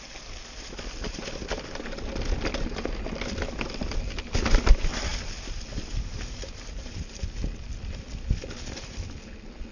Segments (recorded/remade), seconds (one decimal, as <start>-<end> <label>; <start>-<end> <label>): 0.0-9.7 recorded